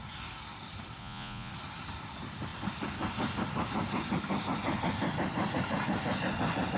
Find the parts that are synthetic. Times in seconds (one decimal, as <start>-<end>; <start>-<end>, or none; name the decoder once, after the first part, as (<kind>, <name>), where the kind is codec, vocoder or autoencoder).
1.0-1.5 (vocoder, Vocos)